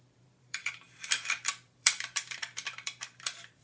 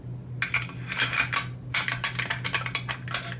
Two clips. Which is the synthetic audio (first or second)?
first